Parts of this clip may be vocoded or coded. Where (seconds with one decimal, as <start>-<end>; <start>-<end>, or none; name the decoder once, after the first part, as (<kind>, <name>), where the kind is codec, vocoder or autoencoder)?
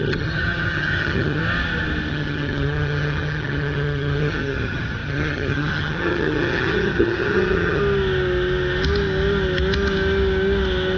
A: 0.0-1.4 (vocoder, HiFi-GAN); 2.1-7.8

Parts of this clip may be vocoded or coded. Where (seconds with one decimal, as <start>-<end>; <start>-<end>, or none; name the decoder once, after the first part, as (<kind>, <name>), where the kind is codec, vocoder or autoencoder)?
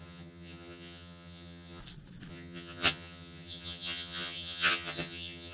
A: 0.0-1.8 (vocoder, HiFi-GAN); 2.3-5.5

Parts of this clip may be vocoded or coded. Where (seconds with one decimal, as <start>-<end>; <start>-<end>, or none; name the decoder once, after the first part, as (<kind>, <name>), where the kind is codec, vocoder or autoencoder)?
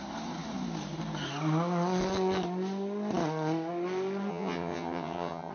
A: 4.3-5.5 (vocoder, HiFi-GAN)